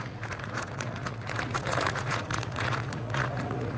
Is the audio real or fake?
fake